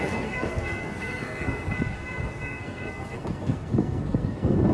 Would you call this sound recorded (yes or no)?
no